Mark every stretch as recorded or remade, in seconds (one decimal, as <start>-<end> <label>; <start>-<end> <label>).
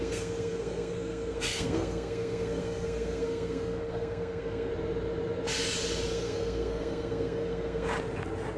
0.0-4.7 remade; 4.7-6.1 recorded; 6.1-7.9 remade; 7.9-8.6 recorded